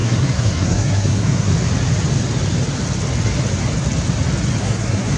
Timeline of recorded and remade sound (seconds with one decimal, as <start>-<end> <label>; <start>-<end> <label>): 0.0-1.5 remade; 1.5-4.6 recorded; 4.6-5.2 remade